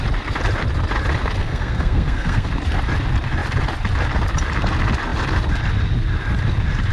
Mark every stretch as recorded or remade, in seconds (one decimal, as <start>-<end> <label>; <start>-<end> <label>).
0.0-1.4 recorded; 1.4-2.5 remade; 2.5-6.9 recorded